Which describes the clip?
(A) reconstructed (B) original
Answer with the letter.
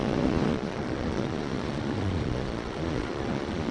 A